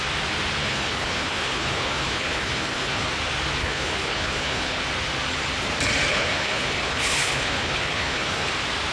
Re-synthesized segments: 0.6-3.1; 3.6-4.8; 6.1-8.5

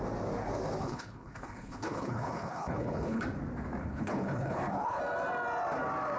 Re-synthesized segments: 0.8-3.2; 3.8-5.0

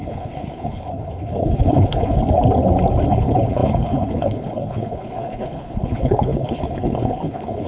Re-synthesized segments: 0.0-2.2; 3.1-7.7